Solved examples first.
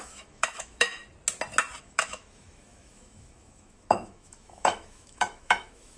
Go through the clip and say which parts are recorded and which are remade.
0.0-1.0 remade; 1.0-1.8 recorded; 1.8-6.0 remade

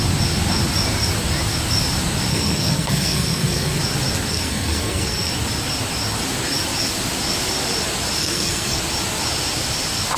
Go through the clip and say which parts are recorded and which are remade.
0.0-2.3 recorded; 2.3-3.8 remade; 3.8-4.3 recorded; 4.3-5.3 remade; 5.3-8.2 recorded; 8.2-8.8 remade; 8.8-10.2 recorded

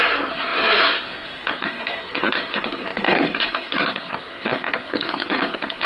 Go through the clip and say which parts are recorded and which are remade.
0.0-5.9 remade

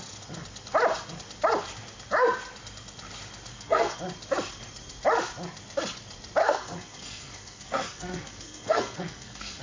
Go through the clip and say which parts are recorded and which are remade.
0.0-3.5 recorded; 3.5-4.0 remade; 4.0-6.4 recorded; 6.4-9.6 remade

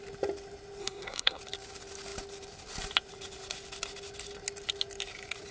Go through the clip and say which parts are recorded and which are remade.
0.0-0.8 recorded; 0.8-1.4 remade; 1.4-5.5 recorded

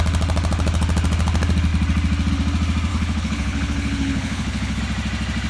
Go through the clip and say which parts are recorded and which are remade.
0.0-2.9 recorded; 2.9-4.8 remade; 4.8-5.5 recorded

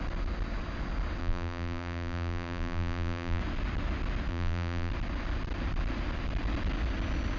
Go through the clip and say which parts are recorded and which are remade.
0.0-1.2 recorded; 1.2-3.4 remade; 3.4-4.3 recorded; 4.3-4.9 remade; 4.9-7.4 recorded

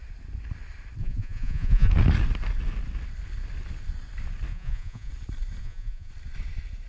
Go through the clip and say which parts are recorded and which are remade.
0.0-1.0 recorded; 1.0-1.9 remade; 1.9-4.5 recorded; 4.5-5.1 remade; 5.1-5.6 recorded; 5.6-6.1 remade; 6.1-6.9 recorded